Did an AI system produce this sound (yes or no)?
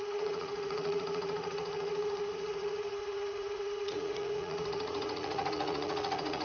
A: yes